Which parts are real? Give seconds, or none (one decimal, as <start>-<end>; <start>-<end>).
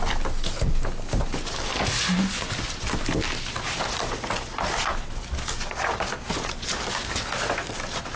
0.0-8.2